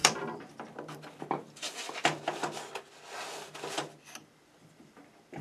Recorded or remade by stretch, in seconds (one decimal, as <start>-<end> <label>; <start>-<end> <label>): 0.0-0.6 remade; 0.6-4.2 recorded; 4.2-5.4 remade